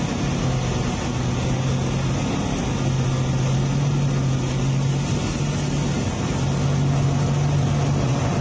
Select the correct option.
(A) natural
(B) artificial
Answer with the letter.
A